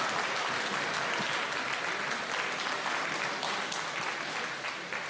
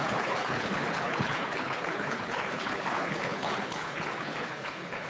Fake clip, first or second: second